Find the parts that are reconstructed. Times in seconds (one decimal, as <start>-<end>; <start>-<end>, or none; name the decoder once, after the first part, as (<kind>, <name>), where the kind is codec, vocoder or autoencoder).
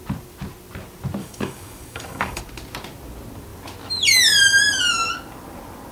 1.2-2.4 (codec, DAC)